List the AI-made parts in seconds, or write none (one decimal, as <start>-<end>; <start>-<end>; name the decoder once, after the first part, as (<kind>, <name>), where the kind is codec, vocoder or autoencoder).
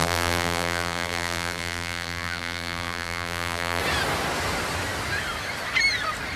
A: 0.0-3.8 (vocoder, BigVGAN v2)